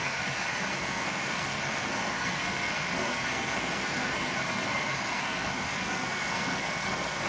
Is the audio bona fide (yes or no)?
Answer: no